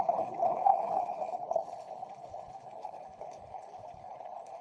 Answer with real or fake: fake